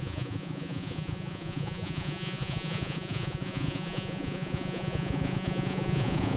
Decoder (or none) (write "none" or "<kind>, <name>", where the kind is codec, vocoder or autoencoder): vocoder, Vocos